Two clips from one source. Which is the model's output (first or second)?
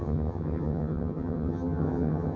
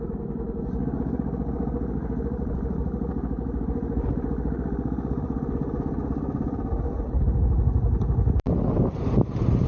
first